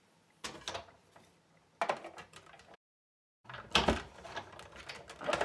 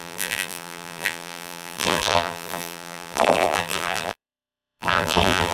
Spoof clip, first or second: second